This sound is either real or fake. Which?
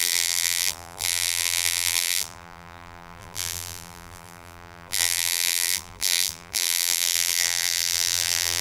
fake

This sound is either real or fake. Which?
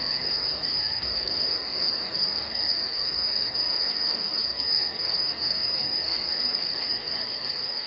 fake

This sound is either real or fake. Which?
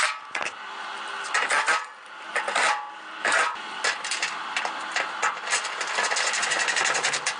real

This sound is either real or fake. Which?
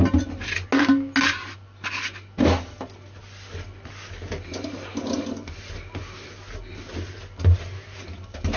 real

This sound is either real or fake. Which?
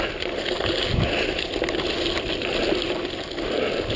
real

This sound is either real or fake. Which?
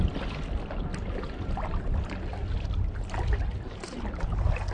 real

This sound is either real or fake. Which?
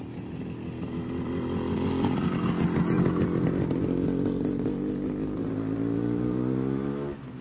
real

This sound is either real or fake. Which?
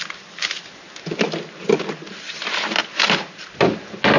real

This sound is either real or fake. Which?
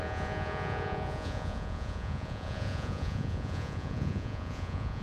fake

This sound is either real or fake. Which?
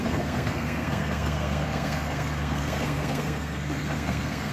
fake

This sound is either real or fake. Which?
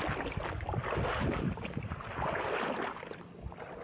real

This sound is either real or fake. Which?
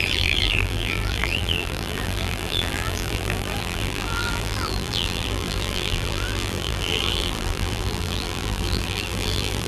fake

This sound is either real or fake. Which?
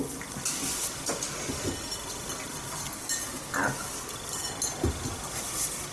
real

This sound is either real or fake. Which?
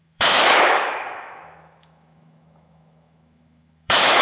fake